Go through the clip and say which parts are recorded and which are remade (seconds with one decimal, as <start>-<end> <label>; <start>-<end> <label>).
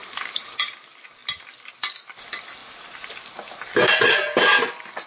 0.0-0.5 remade; 0.5-5.1 recorded